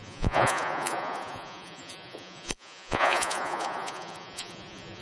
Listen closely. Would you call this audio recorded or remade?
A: remade